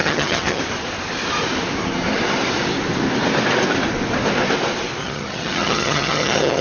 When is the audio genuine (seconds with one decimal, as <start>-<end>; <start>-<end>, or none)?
0.6-5.0